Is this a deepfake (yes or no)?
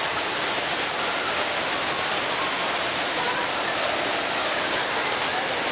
no